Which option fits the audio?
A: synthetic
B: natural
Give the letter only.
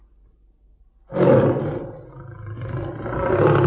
B